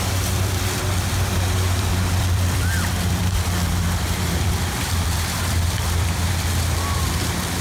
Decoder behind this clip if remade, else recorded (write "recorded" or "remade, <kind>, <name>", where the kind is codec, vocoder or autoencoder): remade, vocoder, BigVGAN v2